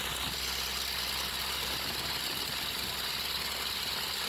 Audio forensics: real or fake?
real